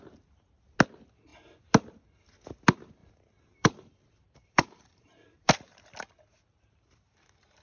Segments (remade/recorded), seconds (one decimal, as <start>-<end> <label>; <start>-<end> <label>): 0.0-3.0 recorded; 3.0-5.8 remade; 5.8-7.6 recorded